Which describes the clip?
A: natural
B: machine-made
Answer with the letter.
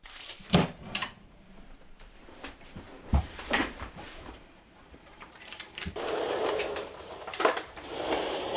B